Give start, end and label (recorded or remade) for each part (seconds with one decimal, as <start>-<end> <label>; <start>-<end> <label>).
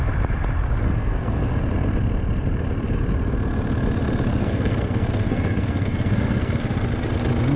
0.0-0.8 recorded; 0.8-1.5 remade; 1.5-4.3 recorded; 4.3-6.6 remade; 6.6-7.6 recorded